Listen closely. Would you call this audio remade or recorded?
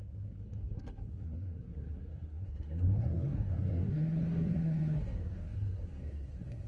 remade